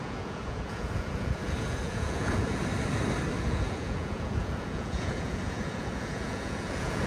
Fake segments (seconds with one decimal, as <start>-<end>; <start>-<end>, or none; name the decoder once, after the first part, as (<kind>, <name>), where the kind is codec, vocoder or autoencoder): 0.0-2.6 (vocoder, Vocos); 3.4-7.1